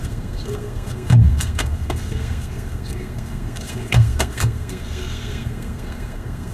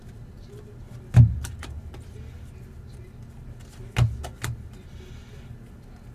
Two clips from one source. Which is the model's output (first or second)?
first